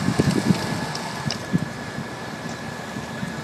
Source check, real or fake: real